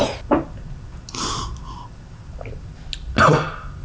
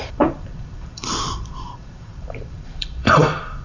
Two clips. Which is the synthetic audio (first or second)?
second